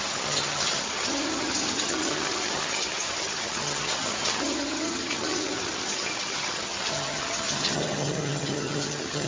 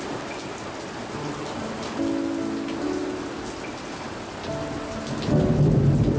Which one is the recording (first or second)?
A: second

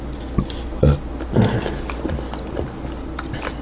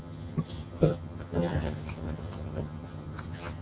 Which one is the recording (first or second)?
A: first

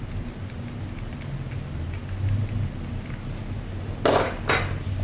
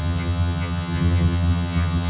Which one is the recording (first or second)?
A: first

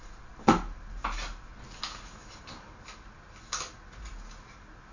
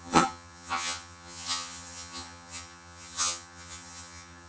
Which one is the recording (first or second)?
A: first